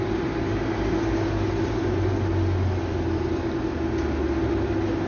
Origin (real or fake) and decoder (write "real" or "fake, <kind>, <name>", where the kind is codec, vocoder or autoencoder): real